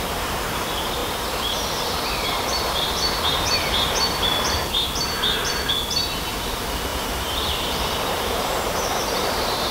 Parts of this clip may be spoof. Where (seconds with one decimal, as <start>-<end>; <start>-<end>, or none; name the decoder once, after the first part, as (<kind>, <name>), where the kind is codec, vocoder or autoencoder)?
6.9-9.7 (vocoder, BigVGAN v2)